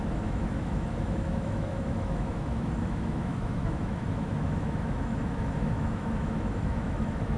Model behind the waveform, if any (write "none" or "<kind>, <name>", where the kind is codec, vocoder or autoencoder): autoencoder, DAC-VAE